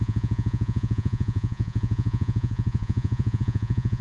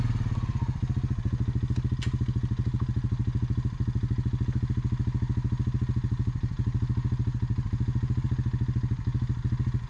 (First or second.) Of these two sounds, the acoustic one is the second